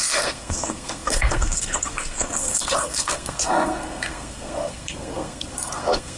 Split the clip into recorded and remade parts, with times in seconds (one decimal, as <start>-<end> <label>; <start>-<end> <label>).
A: 0.0-6.2 remade